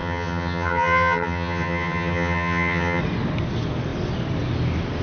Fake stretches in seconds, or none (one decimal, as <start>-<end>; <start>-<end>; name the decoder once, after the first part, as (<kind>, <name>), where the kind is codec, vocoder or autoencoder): 0.0-3.0 (vocoder, HiFi-GAN)